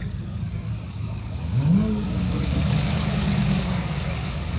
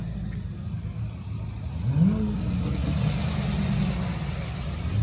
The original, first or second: second